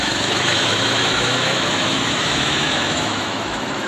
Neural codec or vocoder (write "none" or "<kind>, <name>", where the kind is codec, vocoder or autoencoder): autoencoder, DAC-VAE